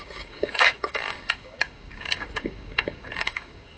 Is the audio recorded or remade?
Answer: remade